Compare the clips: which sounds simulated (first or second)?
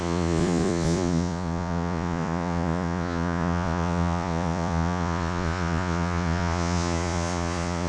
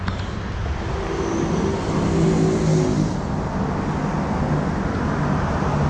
first